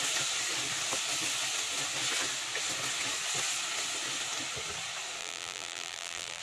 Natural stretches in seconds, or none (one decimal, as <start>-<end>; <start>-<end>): 0.0-5.2